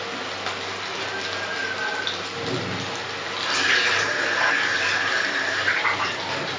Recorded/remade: recorded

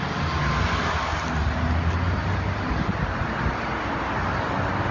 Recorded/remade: recorded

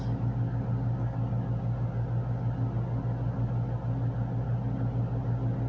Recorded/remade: recorded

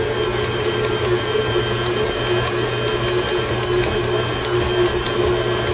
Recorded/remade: recorded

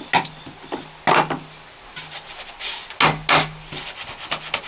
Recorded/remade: recorded